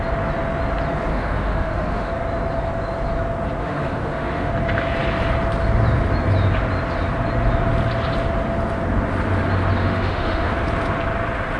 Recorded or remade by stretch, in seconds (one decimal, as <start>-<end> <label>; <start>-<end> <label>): 0.0-1.1 recorded; 1.1-2.1 remade; 2.1-3.6 recorded; 3.6-4.5 remade; 4.5-9.8 recorded; 9.8-10.5 remade; 10.5-11.6 recorded